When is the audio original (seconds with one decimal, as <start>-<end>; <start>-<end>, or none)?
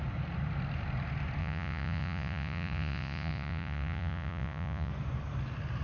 0.0-1.4; 4.9-5.8